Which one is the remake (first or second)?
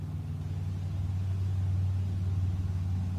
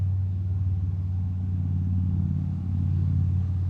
second